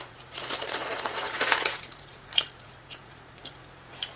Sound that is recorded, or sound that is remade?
remade